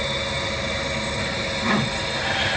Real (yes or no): yes